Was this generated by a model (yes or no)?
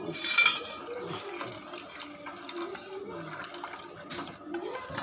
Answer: no